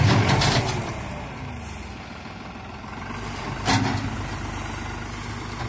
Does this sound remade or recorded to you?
recorded